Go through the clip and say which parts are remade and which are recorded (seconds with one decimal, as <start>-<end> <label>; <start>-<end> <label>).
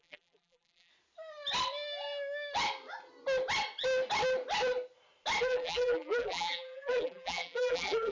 0.0-0.9 remade; 0.9-5.4 recorded; 5.4-8.1 remade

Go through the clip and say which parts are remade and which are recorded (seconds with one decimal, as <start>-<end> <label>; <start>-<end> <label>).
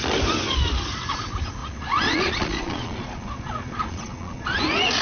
0.0-1.6 recorded; 1.6-4.6 remade; 4.6-5.0 recorded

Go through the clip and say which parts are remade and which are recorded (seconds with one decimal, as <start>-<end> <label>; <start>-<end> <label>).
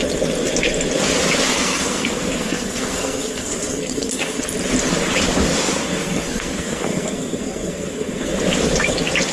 0.0-1.5 recorded; 1.5-4.4 remade; 4.4-6.0 recorded; 6.0-8.3 remade; 8.3-9.3 recorded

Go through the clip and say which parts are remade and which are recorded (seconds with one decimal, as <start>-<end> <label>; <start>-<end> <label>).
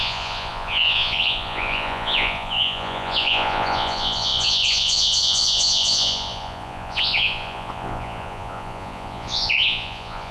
0.0-10.3 remade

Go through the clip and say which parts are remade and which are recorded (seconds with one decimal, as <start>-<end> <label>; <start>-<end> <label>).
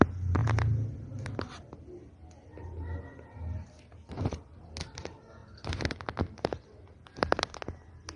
0.0-8.2 recorded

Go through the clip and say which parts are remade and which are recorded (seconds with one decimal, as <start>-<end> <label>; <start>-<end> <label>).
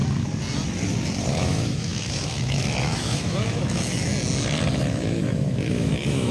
0.0-1.3 recorded; 1.3-4.1 remade; 4.1-4.8 recorded; 4.8-6.3 remade